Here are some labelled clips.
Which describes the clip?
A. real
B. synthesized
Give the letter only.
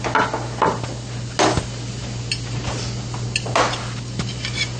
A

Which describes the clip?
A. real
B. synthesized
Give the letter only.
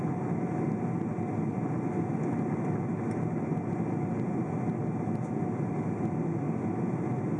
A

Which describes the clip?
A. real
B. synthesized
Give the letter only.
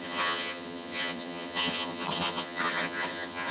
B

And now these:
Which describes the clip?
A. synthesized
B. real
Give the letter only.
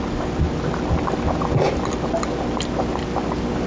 B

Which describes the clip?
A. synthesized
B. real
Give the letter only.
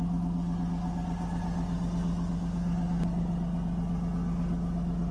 B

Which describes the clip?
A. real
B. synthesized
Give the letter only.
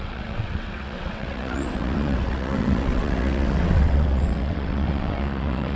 B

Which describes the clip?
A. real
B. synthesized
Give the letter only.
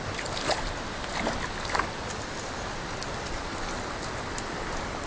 A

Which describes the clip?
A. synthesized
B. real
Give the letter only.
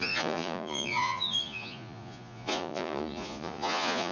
A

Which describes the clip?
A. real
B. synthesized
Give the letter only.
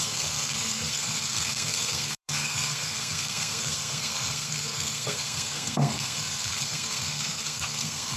B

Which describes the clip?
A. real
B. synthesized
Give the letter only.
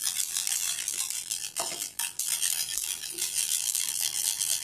B